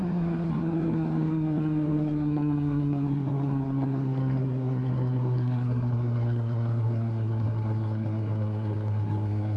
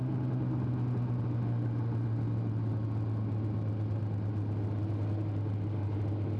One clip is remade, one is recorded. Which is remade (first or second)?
first